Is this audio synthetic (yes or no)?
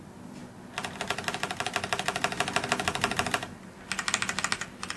no